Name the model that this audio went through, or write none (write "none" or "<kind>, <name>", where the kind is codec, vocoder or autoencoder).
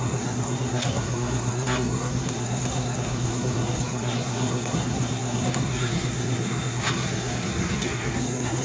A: codec, SNAC